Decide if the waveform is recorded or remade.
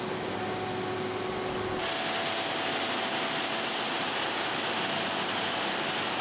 recorded